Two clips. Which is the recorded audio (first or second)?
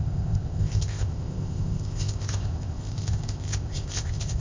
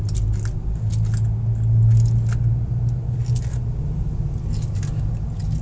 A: second